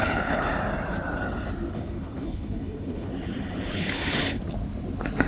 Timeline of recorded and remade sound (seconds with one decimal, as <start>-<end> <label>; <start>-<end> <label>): 0.0-0.5 remade; 0.5-1.7 recorded; 1.7-3.1 remade; 3.1-3.7 recorded; 3.7-4.4 remade; 4.4-5.3 recorded